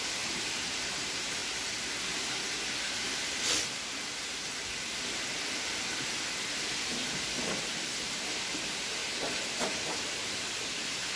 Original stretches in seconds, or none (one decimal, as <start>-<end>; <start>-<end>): 1.4-6.5; 9.0-9.7